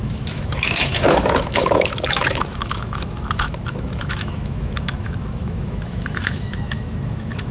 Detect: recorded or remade remade